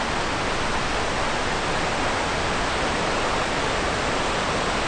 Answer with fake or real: real